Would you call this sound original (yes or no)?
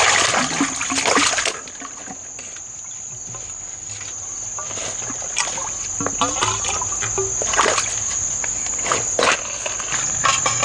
yes